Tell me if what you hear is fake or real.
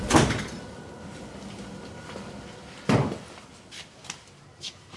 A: real